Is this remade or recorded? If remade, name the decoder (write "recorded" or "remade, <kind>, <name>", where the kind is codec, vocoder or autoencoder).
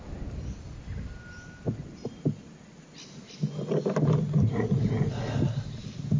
recorded